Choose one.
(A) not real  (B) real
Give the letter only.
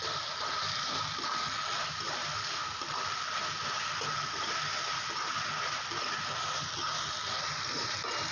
A